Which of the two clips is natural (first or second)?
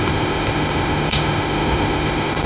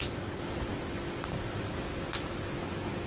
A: second